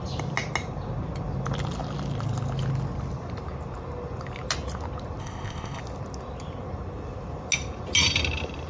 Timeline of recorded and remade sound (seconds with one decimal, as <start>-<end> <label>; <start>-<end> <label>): 0.0-5.2 recorded; 5.2-5.8 remade; 5.8-8.7 recorded